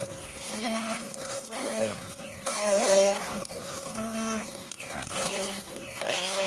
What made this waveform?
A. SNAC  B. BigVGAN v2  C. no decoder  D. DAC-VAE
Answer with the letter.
A